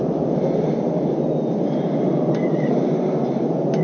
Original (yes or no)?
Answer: no